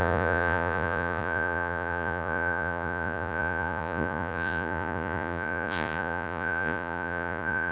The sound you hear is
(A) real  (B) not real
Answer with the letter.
B